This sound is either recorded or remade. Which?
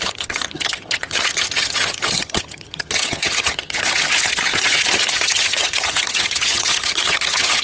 remade